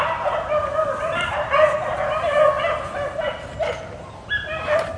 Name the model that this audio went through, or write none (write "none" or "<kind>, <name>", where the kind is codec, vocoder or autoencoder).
none